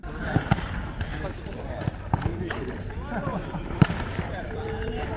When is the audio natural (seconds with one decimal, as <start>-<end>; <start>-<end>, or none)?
0.0-1.1; 1.7-2.3; 2.8-3.3; 4.6-5.2

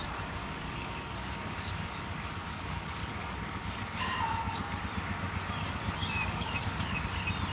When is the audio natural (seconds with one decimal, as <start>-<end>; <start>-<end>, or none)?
0.0-0.4; 4.8-6.0; 7.0-7.5

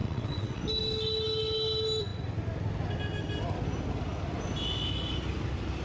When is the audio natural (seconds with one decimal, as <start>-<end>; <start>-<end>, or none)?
0.6-5.8

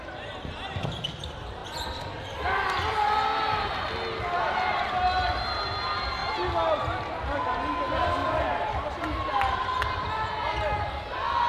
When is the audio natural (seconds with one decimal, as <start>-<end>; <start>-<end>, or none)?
0.0-11.5

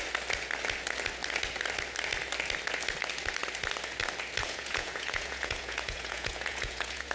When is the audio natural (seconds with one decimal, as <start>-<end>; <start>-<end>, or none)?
0.0-4.4

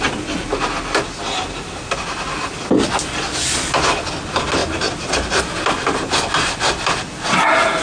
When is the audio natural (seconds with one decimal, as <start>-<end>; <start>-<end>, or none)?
0.0-4.6; 5.4-7.8

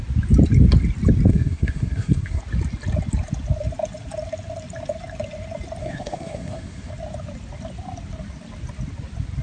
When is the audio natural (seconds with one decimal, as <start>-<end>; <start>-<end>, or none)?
0.0-1.3; 2.4-5.8; 6.9-9.4

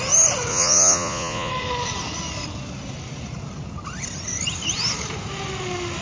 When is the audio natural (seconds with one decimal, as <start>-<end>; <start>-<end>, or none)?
0.0-0.5; 1.5-6.0